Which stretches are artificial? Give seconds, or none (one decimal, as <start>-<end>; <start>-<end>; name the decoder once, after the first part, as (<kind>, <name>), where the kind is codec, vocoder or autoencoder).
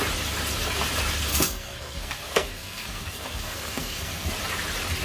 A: 1.3-4.3 (codec, SNAC)